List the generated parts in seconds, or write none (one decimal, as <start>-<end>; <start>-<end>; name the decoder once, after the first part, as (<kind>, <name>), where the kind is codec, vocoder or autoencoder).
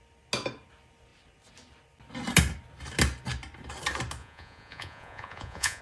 4.2-5.8 (vocoder, Vocos)